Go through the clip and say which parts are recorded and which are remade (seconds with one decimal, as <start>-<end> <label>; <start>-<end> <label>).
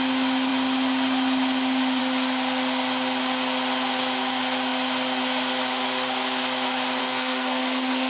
0.0-7.0 recorded; 7.0-8.1 remade